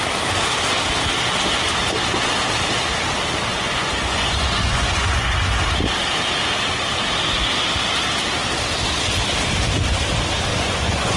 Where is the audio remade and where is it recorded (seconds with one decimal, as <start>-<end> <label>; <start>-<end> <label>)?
0.0-3.5 recorded; 3.5-5.4 remade; 5.4-10.5 recorded; 10.5-11.2 remade